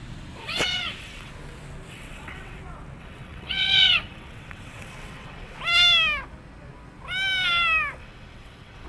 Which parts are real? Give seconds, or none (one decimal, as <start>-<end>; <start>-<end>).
0.0-0.4; 1.3-1.9; 2.6-3.0; 5.6-8.0